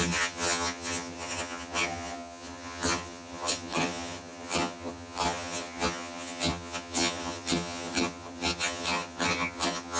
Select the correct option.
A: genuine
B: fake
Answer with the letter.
B